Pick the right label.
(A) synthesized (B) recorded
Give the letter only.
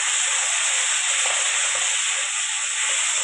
B